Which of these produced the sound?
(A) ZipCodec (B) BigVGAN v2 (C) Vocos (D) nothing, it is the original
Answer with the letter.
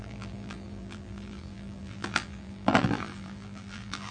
B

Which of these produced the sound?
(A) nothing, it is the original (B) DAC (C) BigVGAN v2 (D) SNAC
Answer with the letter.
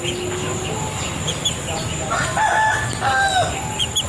A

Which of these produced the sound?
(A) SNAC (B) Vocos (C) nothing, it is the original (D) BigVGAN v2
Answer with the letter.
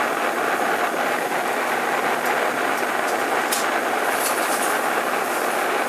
C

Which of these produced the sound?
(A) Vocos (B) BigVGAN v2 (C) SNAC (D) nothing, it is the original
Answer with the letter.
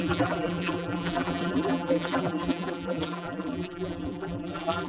B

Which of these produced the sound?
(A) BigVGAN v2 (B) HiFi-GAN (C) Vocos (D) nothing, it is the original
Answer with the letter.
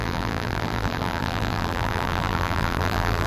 A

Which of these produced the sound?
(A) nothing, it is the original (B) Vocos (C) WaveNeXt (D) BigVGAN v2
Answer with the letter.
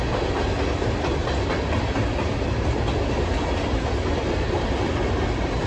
A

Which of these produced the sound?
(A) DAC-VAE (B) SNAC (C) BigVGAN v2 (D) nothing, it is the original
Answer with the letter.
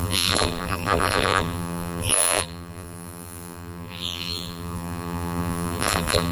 C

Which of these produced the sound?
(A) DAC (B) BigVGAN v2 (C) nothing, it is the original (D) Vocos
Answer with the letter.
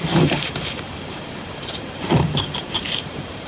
B